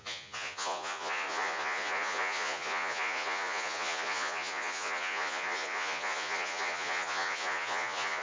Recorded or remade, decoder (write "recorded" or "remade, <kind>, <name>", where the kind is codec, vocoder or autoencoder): remade, vocoder, Vocos